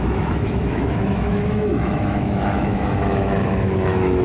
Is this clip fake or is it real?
fake